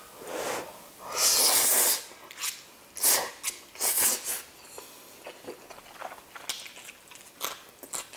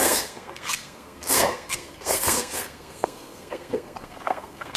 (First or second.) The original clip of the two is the first